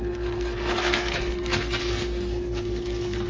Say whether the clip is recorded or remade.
remade